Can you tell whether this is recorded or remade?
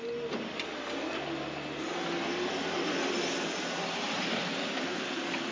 recorded